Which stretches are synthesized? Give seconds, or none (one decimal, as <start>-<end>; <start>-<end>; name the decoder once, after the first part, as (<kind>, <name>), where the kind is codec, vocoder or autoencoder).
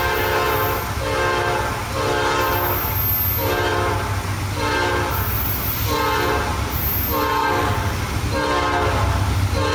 7.4-8.0 (codec, DAC)